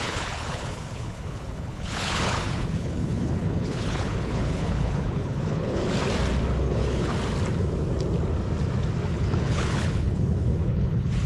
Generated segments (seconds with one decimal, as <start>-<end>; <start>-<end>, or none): 0.0-5.8; 6.6-7.1; 9.0-11.3